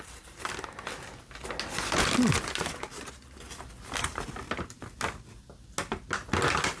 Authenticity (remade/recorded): recorded